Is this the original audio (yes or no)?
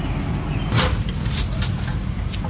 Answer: yes